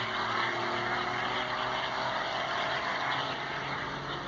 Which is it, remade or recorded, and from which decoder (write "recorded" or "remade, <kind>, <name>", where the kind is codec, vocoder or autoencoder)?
recorded